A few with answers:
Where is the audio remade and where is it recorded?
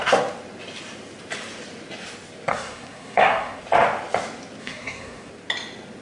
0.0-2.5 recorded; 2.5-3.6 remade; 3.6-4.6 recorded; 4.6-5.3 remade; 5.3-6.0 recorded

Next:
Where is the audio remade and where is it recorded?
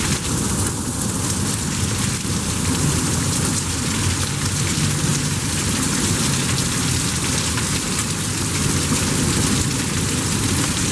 0.0-5.1 recorded; 5.1-5.6 remade; 5.6-10.9 recorded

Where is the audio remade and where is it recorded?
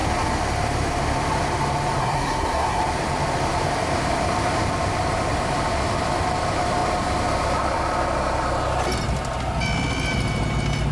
0.0-2.0 recorded; 2.0-2.8 remade; 2.8-10.9 recorded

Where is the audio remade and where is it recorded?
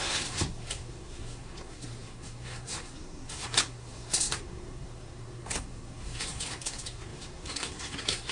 0.0-8.3 remade